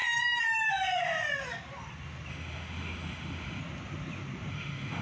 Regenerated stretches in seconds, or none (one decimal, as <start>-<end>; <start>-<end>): 2.3-3.6; 4.5-5.0